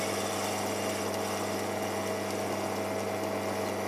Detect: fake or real real